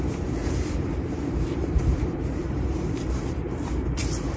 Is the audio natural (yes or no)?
no